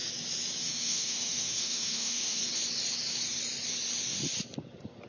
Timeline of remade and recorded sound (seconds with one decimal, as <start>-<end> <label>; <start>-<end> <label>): 0.0-0.6 recorded; 0.6-2.4 remade; 2.4-5.1 recorded